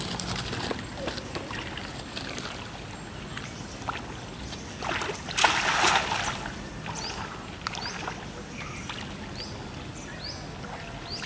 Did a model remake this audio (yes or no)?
no